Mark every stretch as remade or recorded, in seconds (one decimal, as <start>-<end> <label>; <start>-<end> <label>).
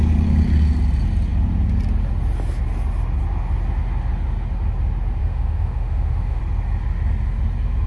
0.0-5.2 recorded; 5.2-6.4 remade; 6.4-7.9 recorded